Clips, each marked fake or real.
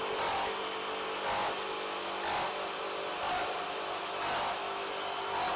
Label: real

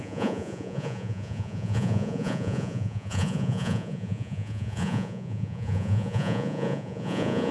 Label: fake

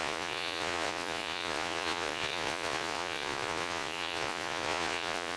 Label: fake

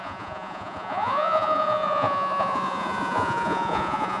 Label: fake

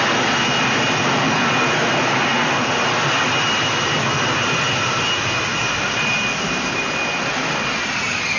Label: real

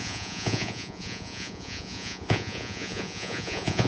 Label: fake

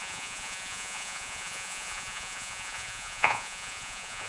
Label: fake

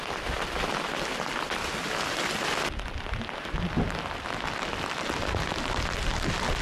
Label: real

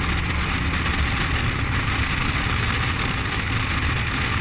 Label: real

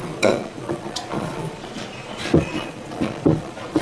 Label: fake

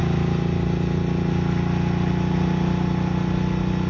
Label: real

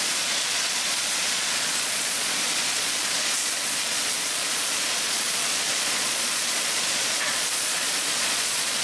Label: fake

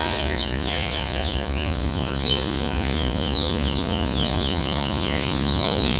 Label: fake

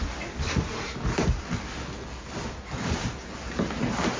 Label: real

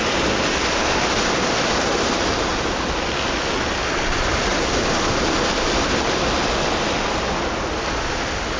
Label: real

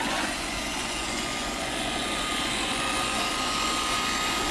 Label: fake